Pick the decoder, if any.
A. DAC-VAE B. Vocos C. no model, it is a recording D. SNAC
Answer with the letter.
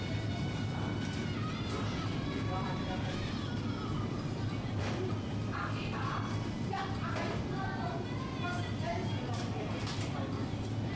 C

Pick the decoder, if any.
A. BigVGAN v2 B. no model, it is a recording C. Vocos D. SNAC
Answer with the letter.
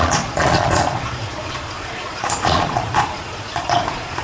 C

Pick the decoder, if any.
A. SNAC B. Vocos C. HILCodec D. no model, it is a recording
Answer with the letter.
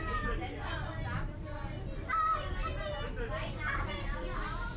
D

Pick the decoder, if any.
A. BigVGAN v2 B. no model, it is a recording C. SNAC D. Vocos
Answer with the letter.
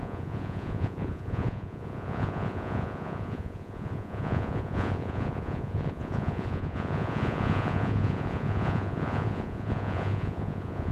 D